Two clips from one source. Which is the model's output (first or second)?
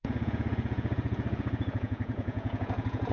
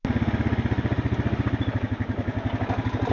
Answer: first